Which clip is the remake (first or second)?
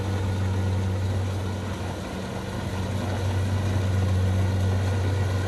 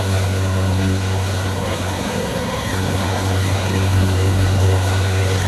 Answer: second